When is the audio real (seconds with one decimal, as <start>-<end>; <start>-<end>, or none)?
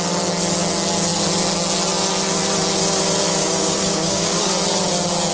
0.0-3.4; 4.5-5.3